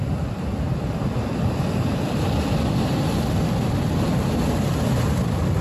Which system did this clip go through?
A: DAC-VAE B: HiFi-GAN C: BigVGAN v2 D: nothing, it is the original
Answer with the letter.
C